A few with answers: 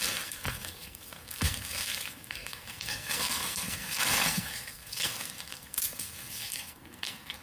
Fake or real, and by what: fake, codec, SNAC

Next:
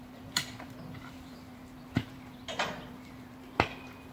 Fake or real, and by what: real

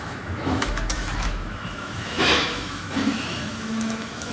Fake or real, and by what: fake, autoencoder, DAC-VAE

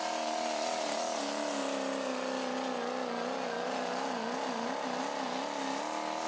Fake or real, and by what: real